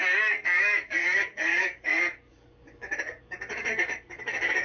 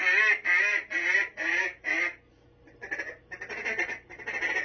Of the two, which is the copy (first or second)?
first